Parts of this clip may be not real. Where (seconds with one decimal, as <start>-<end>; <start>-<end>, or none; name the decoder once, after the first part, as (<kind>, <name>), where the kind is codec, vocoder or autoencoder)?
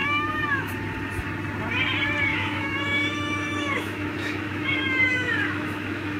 0.0-0.7 (autoencoder, DAC-VAE); 2.3-6.2